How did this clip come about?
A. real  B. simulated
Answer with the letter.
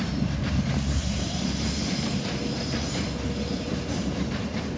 B